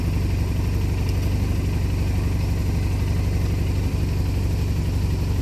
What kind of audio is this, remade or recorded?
recorded